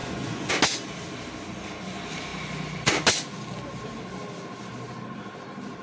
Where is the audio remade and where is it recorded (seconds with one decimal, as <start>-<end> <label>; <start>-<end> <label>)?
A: 0.0-0.5 remade; 0.5-5.8 recorded